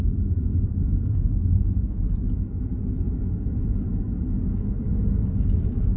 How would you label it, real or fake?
fake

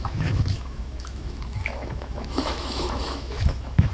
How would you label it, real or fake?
fake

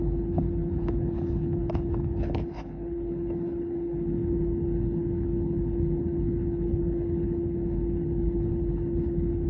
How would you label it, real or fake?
fake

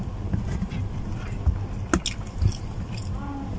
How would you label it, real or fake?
real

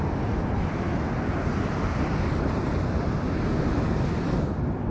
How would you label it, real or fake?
real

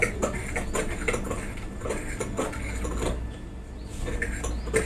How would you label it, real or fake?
real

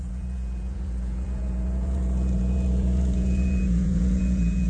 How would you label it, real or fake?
fake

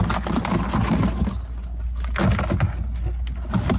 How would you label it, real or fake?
real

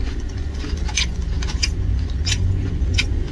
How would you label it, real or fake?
fake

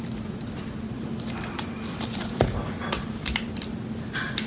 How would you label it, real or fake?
fake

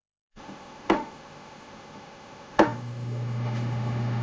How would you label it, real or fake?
fake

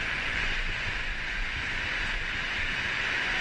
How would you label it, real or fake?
fake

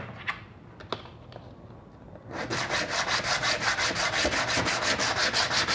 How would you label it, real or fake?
real